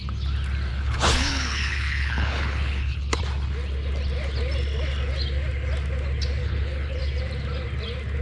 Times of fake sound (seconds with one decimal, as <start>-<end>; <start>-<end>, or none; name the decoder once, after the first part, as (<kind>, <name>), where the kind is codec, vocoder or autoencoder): 0.7-3.2 (codec, HILCodec); 6.4-7.0